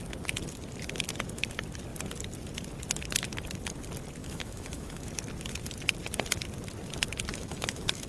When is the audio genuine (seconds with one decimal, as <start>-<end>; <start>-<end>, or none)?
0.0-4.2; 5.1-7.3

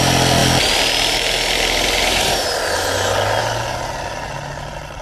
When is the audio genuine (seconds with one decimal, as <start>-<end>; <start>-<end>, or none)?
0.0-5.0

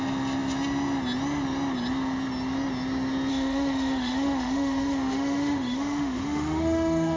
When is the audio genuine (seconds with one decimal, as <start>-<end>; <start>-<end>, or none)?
0.0-3.3

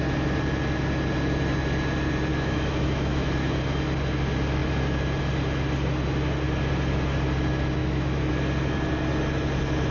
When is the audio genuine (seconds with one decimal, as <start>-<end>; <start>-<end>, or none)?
0.0-2.3; 3.6-7.8; 8.3-9.9

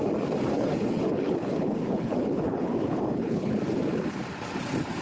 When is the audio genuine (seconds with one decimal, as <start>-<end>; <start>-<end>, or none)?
0.0-0.5; 3.5-5.0

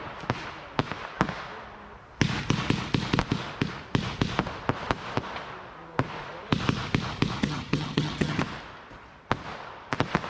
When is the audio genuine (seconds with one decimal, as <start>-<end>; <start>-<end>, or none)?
0.0-7.4; 8.4-10.3